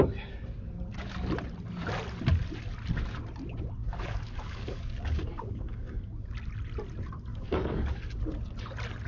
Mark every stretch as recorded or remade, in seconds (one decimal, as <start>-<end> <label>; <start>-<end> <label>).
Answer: 0.0-3.8 recorded; 3.8-6.0 remade; 6.0-7.3 recorded; 7.3-8.2 remade; 8.2-9.1 recorded